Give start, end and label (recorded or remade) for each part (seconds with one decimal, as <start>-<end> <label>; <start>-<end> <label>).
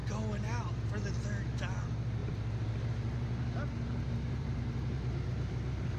0.0-2.2 recorded; 2.2-6.0 remade